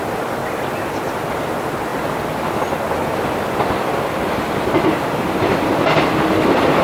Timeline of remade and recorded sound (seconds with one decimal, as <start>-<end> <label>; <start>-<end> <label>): 0.0-6.8 recorded